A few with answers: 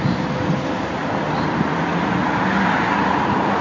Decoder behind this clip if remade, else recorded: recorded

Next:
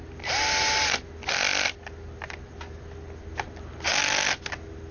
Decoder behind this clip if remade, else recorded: recorded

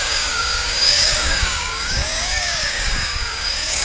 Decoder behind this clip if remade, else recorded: remade, codec, DAC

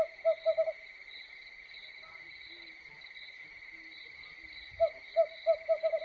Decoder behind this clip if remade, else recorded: recorded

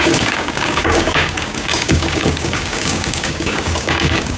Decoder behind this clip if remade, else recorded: remade, codec, DAC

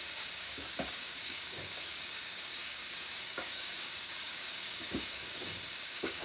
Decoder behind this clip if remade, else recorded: remade, codec, DAC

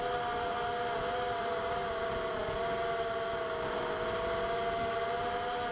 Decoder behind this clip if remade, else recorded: recorded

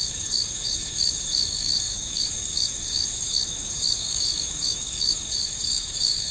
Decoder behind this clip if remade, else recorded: remade, codec, DAC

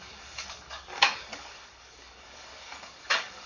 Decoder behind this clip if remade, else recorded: remade, codec, DAC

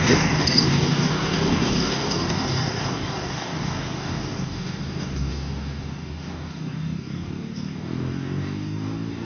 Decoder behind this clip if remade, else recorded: remade, codec, DAC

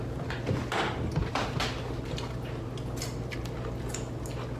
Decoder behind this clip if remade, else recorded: recorded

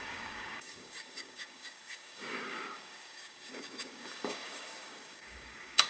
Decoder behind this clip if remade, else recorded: remade, codec, DAC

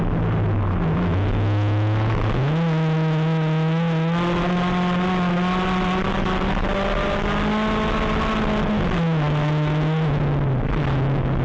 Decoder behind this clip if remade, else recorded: recorded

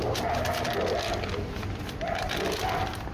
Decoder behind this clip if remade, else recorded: recorded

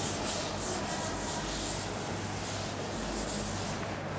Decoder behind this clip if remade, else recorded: recorded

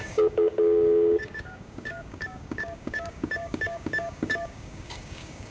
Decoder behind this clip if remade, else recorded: remade, codec, DAC